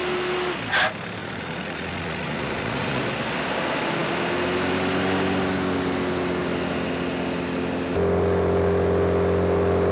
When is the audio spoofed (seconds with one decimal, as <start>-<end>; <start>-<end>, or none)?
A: 1.2-3.0